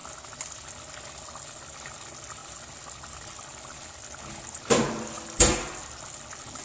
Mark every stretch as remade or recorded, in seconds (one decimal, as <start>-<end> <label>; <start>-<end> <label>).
0.0-6.6 recorded